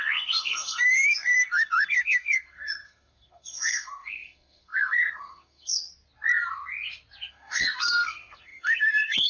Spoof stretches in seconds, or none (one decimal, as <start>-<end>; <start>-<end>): 0.0-5.9; 7.3-9.3